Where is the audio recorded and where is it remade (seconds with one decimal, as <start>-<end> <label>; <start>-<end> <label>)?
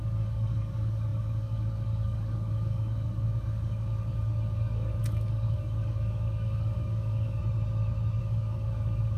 0.0-7.4 remade; 7.4-8.2 recorded; 8.2-9.2 remade